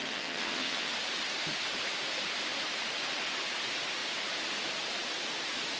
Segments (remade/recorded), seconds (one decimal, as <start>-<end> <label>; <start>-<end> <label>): 0.0-0.9 remade; 0.9-5.8 recorded